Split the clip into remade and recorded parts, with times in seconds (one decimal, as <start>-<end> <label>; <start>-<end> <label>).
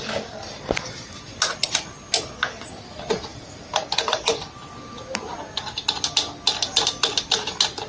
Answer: 0.0-3.3 recorded; 3.3-4.3 remade; 4.3-7.9 recorded